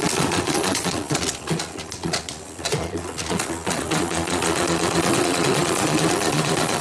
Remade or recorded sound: remade